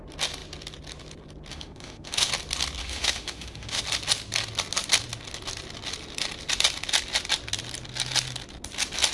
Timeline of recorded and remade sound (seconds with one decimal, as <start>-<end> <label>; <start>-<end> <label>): 0.0-1.5 recorded; 1.5-2.3 remade; 2.3-2.8 recorded; 2.8-3.8 remade; 3.8-9.1 recorded